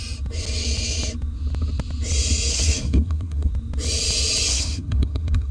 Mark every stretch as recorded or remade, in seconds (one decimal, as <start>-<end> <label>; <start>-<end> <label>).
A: 0.0-2.5 recorded; 2.5-3.5 remade; 3.5-4.5 recorded; 4.5-5.5 remade